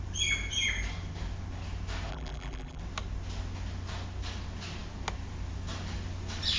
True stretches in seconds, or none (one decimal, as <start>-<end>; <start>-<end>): 0.0-2.1; 2.8-6.6